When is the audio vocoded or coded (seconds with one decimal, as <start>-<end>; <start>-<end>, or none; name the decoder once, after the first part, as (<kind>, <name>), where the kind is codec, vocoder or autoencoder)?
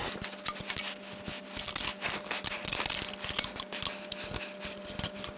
none